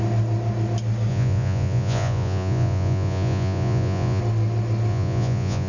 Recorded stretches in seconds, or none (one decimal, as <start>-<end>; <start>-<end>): 0.0-1.1; 4.2-4.9

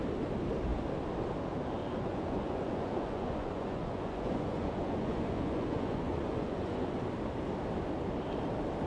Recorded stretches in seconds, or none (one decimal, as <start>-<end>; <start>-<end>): 0.0-1.8; 7.0-8.9

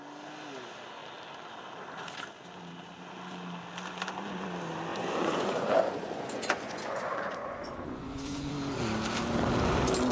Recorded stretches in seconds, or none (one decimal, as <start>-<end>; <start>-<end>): 0.0-4.9; 8.5-10.1

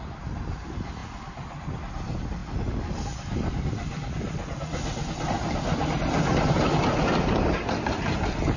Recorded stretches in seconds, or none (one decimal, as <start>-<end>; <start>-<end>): 0.0-8.6